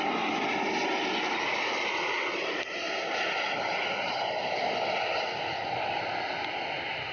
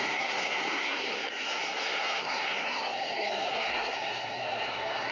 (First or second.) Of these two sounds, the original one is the first